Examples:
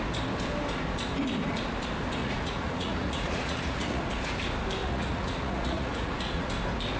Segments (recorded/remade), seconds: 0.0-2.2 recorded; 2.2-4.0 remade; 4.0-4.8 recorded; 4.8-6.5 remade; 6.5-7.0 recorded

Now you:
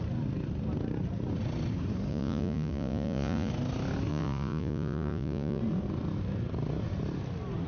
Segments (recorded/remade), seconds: 0.0-2.1 recorded; 2.1-3.5 remade; 3.5-4.1 recorded; 4.1-5.6 remade; 5.6-7.7 recorded

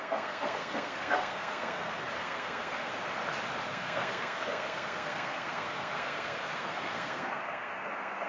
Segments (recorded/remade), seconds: 0.0-2.9 remade; 2.9-3.6 recorded; 3.6-8.3 remade

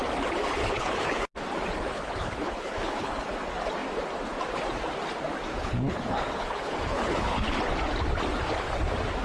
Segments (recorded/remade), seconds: 0.0-0.6 recorded; 0.6-1.2 remade; 1.2-1.9 recorded; 1.9-3.3 remade; 3.3-5.5 recorded; 5.5-7.6 remade; 7.6-9.2 recorded

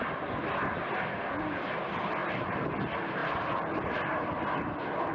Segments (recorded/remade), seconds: 0.0-2.2 recorded; 2.2-2.7 remade; 2.7-5.1 recorded

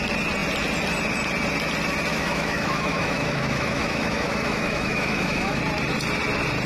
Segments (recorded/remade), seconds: 0.0-2.1 recorded; 2.1-5.6 remade; 5.6-6.7 recorded